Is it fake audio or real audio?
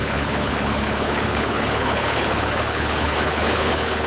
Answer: fake